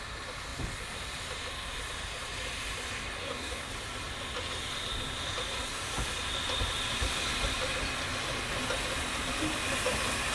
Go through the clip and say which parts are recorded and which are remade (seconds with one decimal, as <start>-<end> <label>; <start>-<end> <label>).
0.0-3.2 recorded; 3.2-3.7 remade; 3.7-10.3 recorded